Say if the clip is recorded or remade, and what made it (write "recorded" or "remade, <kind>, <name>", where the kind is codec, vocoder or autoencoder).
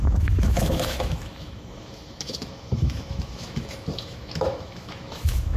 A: remade, autoencoder, DAC-VAE